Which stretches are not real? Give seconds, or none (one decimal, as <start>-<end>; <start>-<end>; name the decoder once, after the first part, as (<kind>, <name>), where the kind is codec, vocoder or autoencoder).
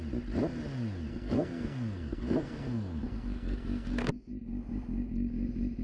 1.1-4.3 (codec, SNAC)